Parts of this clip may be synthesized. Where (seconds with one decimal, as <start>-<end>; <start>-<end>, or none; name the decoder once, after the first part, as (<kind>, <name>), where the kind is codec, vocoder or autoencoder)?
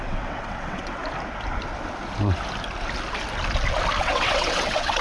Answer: 0.0-1.0 (vocoder, WaveNeXt); 4.0-5.0